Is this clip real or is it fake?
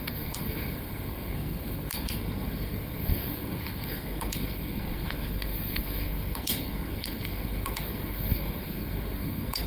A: fake